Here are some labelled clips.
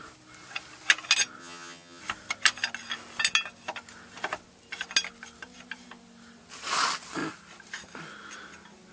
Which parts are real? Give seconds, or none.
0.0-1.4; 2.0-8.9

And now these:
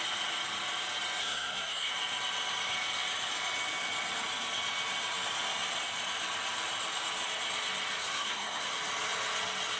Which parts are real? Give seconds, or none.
0.0-1.2; 1.9-8.0; 8.6-9.8

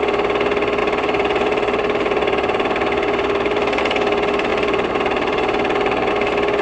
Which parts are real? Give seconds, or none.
0.0-0.8; 3.8-4.5; 6.1-6.6